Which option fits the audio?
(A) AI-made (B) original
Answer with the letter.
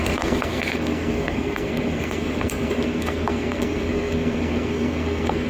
A